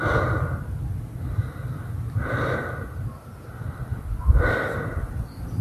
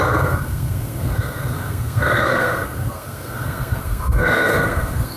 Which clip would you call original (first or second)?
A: first